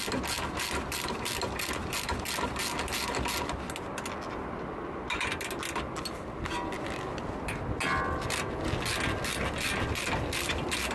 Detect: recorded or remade recorded